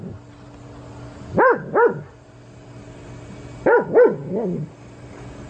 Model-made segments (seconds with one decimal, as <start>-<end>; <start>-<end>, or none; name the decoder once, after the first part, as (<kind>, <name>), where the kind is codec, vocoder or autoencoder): none